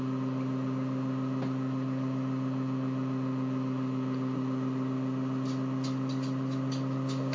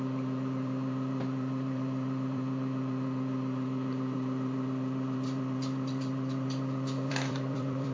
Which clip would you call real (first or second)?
first